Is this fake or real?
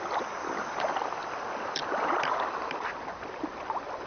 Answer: fake